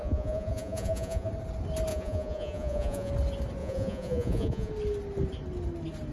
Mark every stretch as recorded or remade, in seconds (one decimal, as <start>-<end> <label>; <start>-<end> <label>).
0.0-1.3 remade; 1.3-1.9 recorded; 1.9-3.1 remade; 3.1-3.6 recorded; 3.6-4.7 remade; 4.7-6.1 recorded